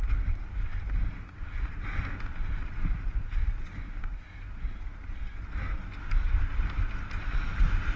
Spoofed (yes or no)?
no